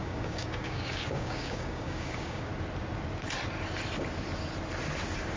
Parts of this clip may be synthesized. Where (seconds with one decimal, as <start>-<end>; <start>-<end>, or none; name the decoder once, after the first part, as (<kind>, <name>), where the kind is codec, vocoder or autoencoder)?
0.0-2.5 (codec, DAC)